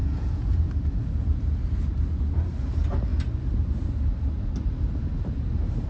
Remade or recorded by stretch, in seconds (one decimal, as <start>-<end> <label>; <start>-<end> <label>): 0.0-0.7 remade; 0.7-5.9 recorded